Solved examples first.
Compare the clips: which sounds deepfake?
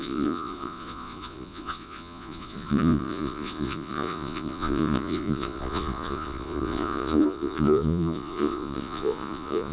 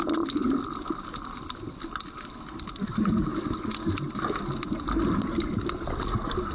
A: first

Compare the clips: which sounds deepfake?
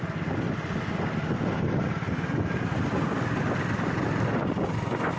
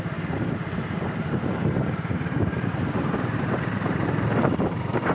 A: second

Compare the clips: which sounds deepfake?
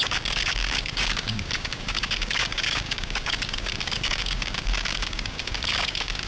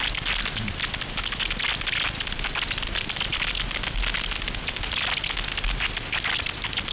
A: first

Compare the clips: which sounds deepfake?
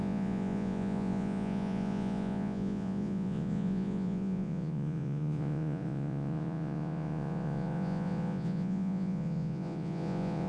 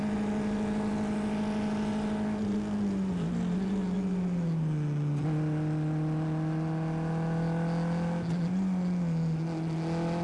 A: first